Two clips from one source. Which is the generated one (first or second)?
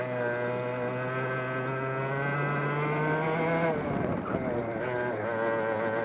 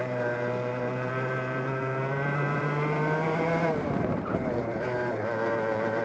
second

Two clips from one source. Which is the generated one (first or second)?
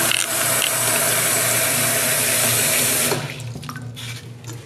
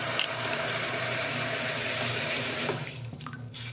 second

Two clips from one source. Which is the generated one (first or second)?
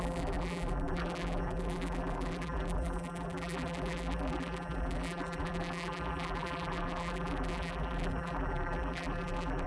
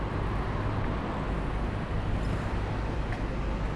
first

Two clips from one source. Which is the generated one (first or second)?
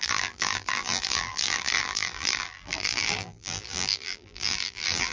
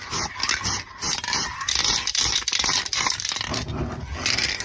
first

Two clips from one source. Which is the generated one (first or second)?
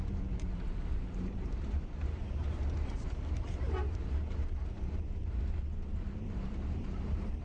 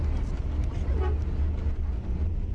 first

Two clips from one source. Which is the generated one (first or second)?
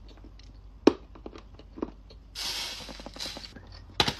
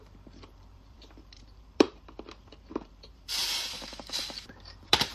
second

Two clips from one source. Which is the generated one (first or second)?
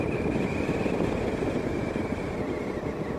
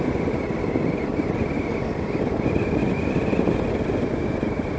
first